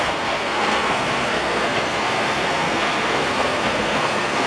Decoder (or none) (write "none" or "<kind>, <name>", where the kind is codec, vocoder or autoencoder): codec, SNAC